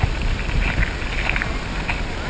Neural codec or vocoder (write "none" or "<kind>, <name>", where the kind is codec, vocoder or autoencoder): none